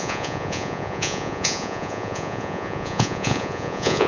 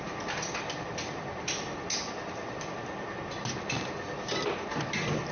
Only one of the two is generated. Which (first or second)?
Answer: first